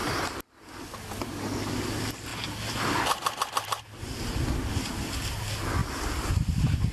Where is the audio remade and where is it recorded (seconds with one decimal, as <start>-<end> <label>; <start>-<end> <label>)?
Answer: 0.0-6.9 recorded